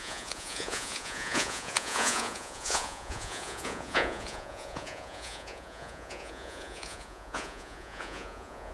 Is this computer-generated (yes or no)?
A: yes